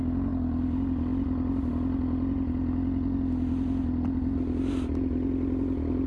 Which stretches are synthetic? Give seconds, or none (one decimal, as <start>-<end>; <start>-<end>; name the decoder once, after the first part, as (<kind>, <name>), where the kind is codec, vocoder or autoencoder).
none

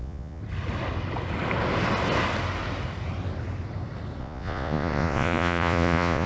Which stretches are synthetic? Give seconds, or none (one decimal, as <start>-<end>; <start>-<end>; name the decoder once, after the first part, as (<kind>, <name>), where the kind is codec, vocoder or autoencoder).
0.0-0.4 (vocoder, Vocos); 4.2-6.3

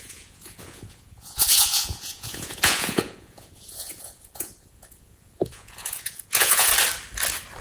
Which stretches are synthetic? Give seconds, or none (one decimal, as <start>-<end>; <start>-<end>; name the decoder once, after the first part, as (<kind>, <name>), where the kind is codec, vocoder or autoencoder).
0.0-6.7 (vocoder, Vocos)

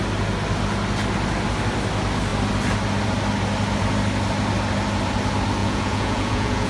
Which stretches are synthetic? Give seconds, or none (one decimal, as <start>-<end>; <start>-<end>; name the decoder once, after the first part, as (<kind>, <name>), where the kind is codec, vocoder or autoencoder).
5.6-6.7 (vocoder, Vocos)

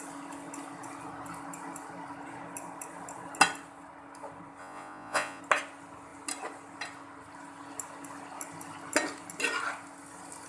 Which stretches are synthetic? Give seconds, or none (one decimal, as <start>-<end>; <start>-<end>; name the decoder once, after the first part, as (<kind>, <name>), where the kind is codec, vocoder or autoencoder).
4.6-5.4 (vocoder, Vocos)

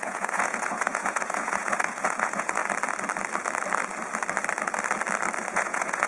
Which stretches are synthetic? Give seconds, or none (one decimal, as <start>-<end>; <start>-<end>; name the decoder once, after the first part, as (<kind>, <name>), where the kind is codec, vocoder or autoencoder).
0.0-2.6 (vocoder, Vocos); 5.5-6.1

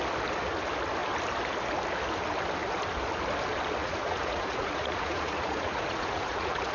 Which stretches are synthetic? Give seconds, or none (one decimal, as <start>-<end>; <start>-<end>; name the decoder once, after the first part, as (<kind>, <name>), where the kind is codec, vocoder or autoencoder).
3.8-6.7 (vocoder, Vocos)

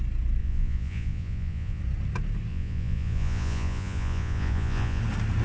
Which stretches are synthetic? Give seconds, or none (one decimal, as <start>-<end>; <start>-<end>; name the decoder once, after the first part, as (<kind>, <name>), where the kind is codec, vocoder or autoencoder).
0.4-1.8 (vocoder, Vocos); 2.5-5.0